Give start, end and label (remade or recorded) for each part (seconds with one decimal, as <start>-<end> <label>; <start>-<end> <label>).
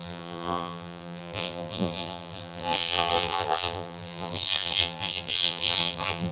0.0-6.3 remade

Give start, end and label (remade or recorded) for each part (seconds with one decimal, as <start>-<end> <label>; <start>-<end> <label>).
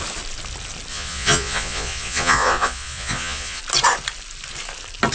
0.0-0.9 recorded; 0.9-3.6 remade; 3.6-5.1 recorded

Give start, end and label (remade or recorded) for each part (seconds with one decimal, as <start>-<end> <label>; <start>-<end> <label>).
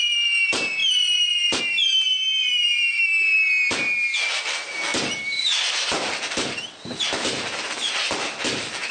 0.0-0.8 recorded; 0.8-1.6 remade; 1.6-2.3 recorded; 2.3-3.0 remade; 3.0-8.9 recorded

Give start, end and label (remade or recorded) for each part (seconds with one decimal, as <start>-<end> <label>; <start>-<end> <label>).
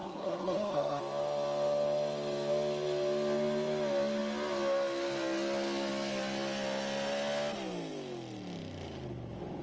0.0-1.0 remade; 1.0-9.6 recorded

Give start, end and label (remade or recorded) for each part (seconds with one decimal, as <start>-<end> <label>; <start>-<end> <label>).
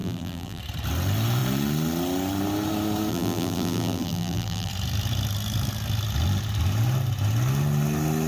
0.0-0.6 remade; 0.6-3.1 recorded; 3.1-4.7 remade; 4.7-8.3 recorded